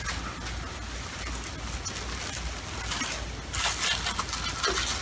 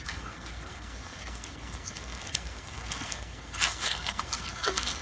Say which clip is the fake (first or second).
second